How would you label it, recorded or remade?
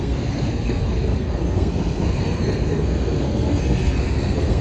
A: remade